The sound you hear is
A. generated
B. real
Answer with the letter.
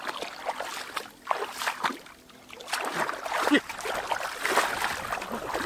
B